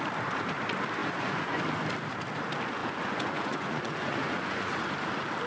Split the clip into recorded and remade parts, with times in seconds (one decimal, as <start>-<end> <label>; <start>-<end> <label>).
0.0-1.0 recorded; 1.0-1.6 remade; 1.6-2.8 recorded; 2.8-4.9 remade; 4.9-5.5 recorded